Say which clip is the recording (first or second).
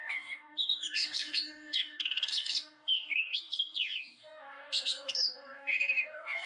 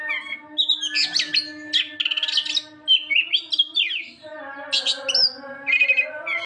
second